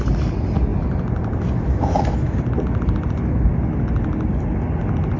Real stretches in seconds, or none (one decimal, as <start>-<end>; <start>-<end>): 0.0-5.2